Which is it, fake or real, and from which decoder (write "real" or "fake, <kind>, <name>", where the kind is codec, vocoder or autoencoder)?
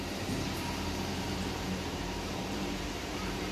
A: fake, vocoder, BigVGAN v2